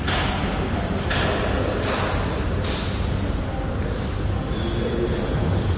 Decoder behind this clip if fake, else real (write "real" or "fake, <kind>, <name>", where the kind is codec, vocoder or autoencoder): real